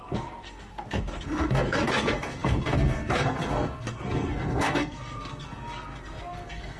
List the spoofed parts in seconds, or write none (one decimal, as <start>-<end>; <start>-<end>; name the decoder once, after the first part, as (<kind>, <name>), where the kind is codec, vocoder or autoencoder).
0.0-6.8 (codec, SNAC)